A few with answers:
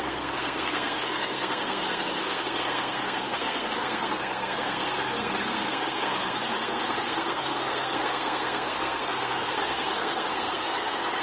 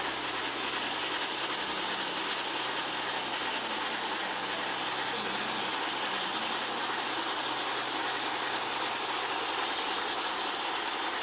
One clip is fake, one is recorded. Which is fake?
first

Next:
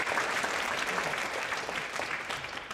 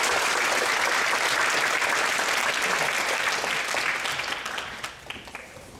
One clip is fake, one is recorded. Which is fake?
first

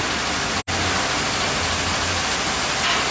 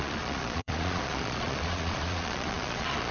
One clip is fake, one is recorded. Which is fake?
second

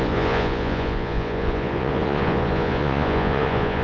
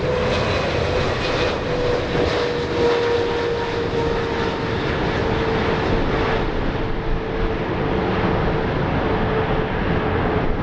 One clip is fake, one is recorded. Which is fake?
first